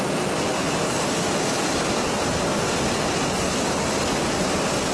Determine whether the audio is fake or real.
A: real